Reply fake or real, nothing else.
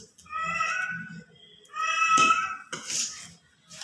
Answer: real